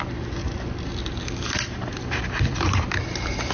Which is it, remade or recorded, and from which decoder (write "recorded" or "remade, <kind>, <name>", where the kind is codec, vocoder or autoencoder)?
recorded